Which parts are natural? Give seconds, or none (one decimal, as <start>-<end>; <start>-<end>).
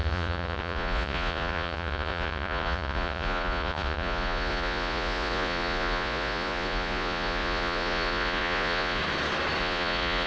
9.0-9.6